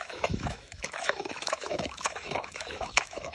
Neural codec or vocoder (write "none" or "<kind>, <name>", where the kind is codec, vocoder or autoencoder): autoencoder, DAC-VAE